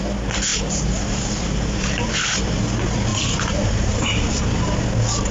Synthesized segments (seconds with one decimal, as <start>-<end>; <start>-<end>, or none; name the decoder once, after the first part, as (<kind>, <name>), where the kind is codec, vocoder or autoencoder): 0.5-2.6 (vocoder, BigVGAN v2); 3.1-4.3